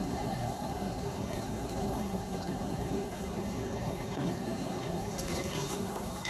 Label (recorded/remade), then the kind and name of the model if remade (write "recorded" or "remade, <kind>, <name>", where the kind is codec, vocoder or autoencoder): remade, codec, SNAC